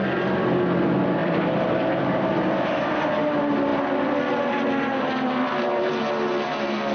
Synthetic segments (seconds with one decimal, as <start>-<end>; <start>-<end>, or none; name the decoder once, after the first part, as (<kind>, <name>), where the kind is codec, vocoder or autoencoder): 1.2-2.9 (vocoder, BigVGAN v2); 3.7-6.0